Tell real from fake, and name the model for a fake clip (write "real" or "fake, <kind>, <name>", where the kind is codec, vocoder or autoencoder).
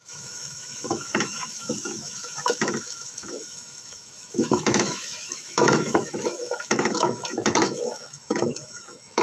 fake, autoencoder, DAC-VAE